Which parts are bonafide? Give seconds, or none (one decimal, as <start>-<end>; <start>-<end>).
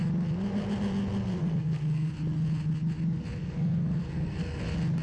0.0-1.4; 2.1-3.4; 4.6-5.0